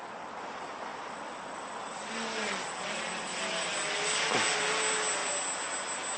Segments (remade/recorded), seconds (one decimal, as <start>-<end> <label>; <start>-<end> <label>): 0.0-6.2 recorded